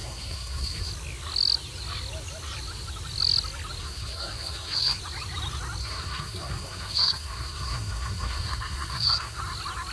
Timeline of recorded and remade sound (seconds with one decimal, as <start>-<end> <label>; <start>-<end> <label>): 0.0-0.9 remade; 0.9-3.8 recorded; 3.8-5.0 remade; 5.0-5.8 recorded; 5.8-9.4 remade; 9.4-9.9 recorded